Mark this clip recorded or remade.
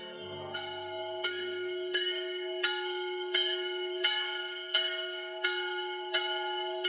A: remade